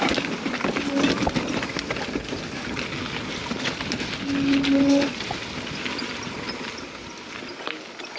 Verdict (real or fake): real